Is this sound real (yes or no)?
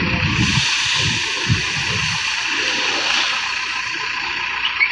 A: yes